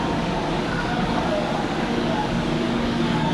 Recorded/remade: remade